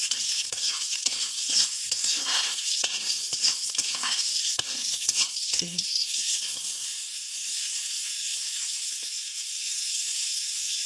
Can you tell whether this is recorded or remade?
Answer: remade